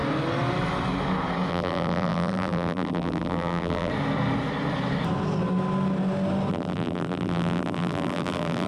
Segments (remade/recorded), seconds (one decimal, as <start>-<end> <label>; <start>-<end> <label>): 0.0-1.5 recorded; 1.5-3.9 remade; 3.9-6.5 recorded; 6.5-8.7 remade